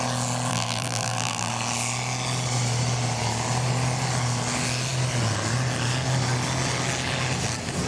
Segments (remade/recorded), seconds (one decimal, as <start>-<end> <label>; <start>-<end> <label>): 0.0-0.5 recorded; 0.5-1.5 remade; 1.5-7.9 recorded